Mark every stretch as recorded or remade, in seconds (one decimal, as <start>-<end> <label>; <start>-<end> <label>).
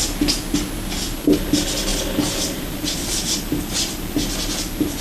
0.0-1.9 recorded; 1.9-3.4 remade; 3.4-5.0 recorded